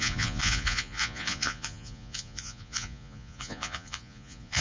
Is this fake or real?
fake